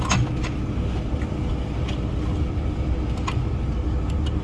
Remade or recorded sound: recorded